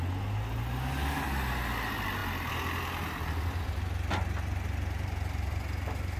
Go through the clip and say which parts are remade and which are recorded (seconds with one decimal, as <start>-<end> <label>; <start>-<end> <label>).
0.0-6.2 recorded

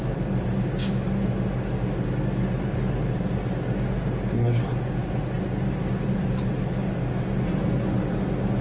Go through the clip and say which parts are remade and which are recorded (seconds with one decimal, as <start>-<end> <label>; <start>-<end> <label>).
0.0-8.6 recorded